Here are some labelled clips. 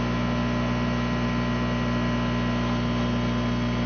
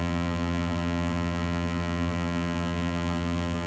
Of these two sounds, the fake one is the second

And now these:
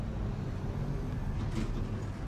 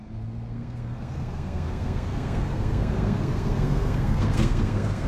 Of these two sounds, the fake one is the second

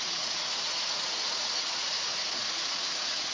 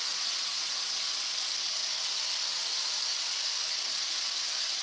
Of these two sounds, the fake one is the first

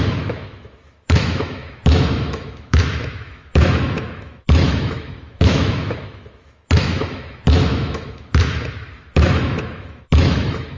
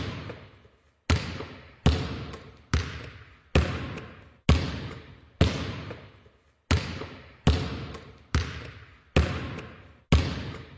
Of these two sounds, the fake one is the first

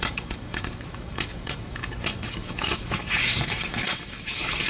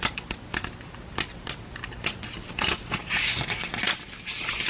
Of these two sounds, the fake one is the first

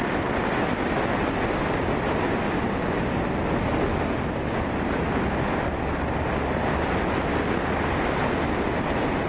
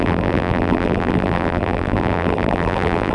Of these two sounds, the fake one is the second